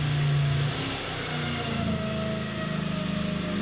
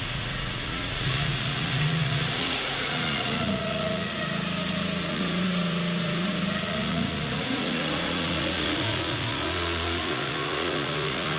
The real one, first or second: first